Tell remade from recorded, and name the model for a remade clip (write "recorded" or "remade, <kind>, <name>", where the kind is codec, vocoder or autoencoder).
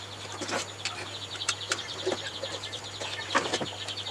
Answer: recorded